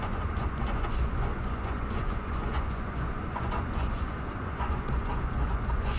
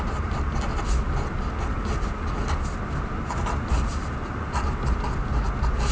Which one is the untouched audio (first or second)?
second